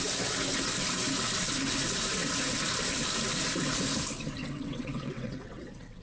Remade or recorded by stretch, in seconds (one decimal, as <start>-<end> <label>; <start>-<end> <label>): 0.0-4.4 recorded; 4.4-6.0 remade